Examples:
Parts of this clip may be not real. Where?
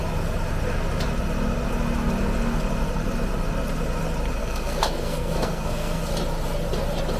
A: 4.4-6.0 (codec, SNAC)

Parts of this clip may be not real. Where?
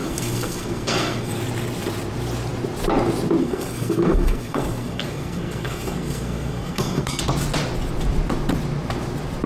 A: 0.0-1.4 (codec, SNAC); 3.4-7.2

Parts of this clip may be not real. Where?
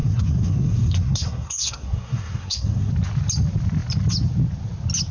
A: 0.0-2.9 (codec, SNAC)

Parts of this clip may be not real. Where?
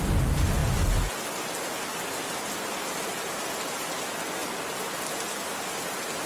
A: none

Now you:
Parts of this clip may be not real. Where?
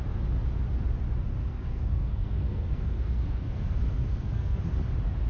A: 1.4-4.6 (codec, SNAC)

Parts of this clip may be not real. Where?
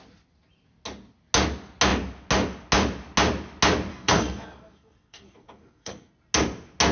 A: 3.9-6.1 (codec, SNAC)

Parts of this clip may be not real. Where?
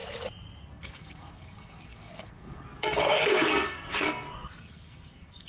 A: 0.6-5.5 (codec, SNAC)